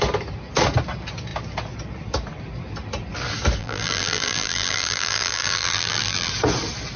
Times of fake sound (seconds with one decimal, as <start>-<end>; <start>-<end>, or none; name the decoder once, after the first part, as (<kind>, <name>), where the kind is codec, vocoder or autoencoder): 3.6-6.3 (vocoder, BigVGAN v2)